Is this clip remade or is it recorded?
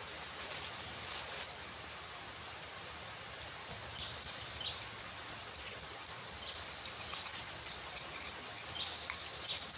recorded